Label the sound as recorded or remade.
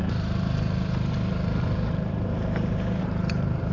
remade